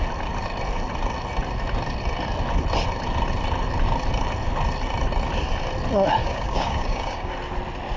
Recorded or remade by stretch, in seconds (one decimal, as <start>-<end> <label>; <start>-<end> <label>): 0.0-6.2 recorded; 6.2-7.3 remade; 7.3-8.0 recorded